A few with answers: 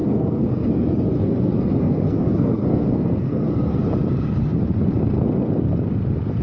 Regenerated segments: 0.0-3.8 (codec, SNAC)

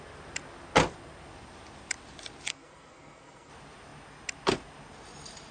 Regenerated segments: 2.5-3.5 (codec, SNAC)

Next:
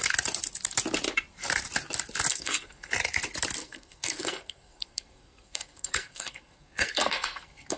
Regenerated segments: 2.3-2.9 (codec, SNAC); 3.6-7.8

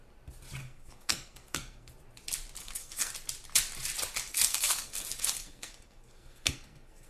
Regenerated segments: 0.6-1.9 (codec, SNAC); 2.6-3.1; 4.3-7.1

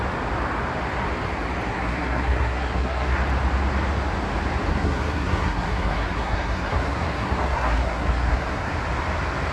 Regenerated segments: 1.7-3.2 (codec, SNAC); 4.7-8.7